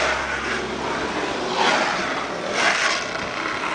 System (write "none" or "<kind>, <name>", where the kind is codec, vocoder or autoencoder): none